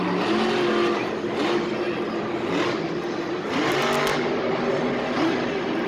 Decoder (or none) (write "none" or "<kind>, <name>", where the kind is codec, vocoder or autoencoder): none